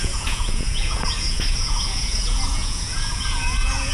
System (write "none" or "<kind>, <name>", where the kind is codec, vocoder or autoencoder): vocoder, Vocos